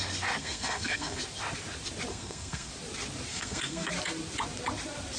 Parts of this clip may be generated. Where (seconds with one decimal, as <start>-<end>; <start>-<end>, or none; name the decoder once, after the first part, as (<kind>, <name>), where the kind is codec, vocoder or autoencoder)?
0.4-1.2 (codec, SNAC); 2.1-2.7; 3.3-3.9